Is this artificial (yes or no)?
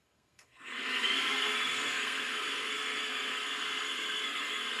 yes